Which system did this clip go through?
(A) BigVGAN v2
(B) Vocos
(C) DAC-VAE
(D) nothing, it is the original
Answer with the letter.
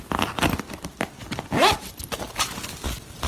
A